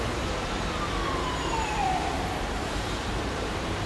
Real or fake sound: fake